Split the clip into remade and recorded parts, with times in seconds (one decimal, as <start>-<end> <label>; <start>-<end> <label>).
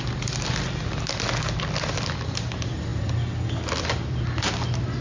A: 0.0-5.0 recorded